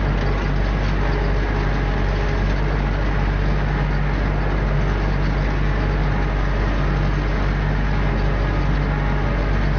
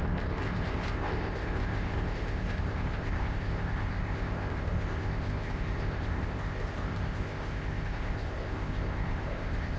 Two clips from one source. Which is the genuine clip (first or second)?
first